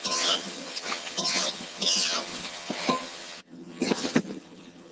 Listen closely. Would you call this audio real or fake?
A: fake